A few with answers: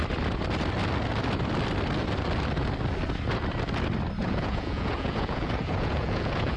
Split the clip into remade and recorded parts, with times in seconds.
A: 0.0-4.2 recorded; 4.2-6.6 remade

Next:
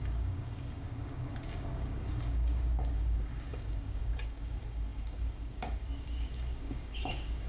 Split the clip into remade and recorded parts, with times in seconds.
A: 0.0-7.5 remade

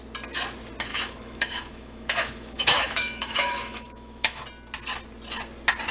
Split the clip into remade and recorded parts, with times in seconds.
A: 0.0-0.9 recorded; 0.9-4.4 remade; 4.4-5.9 recorded

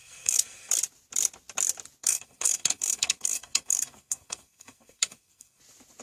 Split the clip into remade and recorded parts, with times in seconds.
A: 0.0-0.7 remade; 0.7-2.0 recorded; 2.0-5.6 remade; 5.6-6.0 recorded

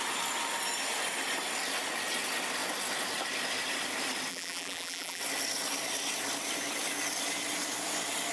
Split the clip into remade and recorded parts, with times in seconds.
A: 0.0-4.3 recorded; 4.3-5.2 remade; 5.2-8.3 recorded

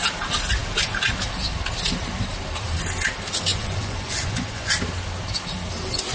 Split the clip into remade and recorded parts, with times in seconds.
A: 0.0-3.5 recorded; 3.5-4.7 remade; 4.7-6.1 recorded

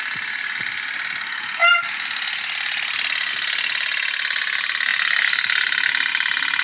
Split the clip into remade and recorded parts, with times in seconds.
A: 0.0-6.6 recorded

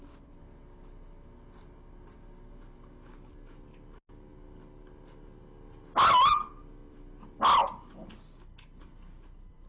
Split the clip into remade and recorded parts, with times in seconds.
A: 0.0-9.7 recorded